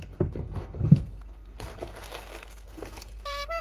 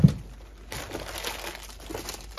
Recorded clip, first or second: second